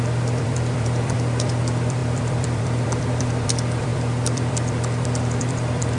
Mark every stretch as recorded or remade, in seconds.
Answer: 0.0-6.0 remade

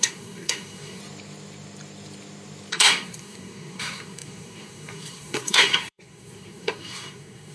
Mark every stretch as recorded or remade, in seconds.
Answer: 0.0-1.0 remade; 1.0-2.7 recorded; 2.7-7.5 remade

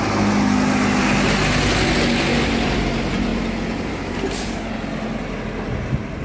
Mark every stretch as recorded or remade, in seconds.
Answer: 0.0-6.2 recorded

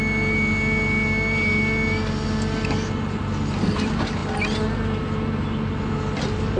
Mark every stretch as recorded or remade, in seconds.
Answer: 0.0-6.6 recorded

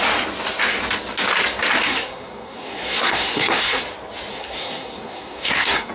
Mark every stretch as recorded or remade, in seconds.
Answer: 0.0-1.9 recorded; 1.9-3.8 remade; 3.8-4.3 recorded; 4.3-5.9 remade